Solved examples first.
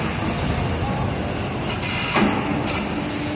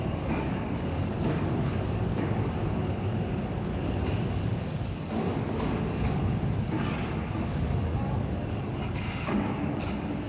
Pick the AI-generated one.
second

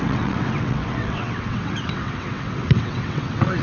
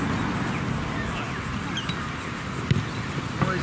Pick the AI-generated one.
first